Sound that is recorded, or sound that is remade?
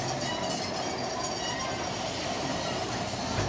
recorded